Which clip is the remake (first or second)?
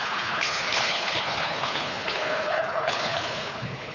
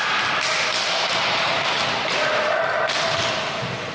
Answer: first